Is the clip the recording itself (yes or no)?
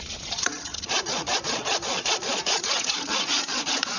no